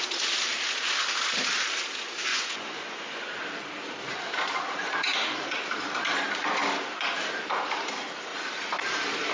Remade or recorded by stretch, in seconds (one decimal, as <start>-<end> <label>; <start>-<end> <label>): 0.0-2.3 recorded; 2.3-3.4 remade; 3.4-9.3 recorded